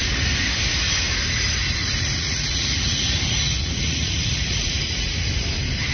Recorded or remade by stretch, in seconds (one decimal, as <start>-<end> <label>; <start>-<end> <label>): 0.0-1.8 recorded; 1.8-5.3 remade; 5.3-5.9 recorded